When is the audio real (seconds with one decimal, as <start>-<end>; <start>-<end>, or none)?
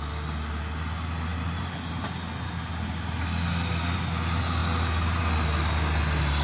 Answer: 0.0-6.4